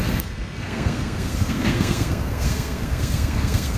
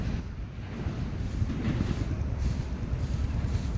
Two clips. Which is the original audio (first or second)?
second